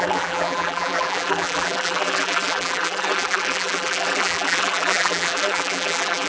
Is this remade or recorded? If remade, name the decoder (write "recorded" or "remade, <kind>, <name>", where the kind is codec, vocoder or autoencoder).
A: remade, vocoder, BigVGAN v2